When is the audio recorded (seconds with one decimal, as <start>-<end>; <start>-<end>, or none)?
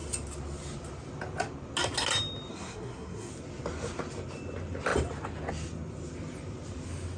0.0-2.5; 3.3-7.2